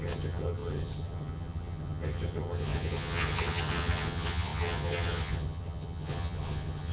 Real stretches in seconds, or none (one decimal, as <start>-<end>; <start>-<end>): none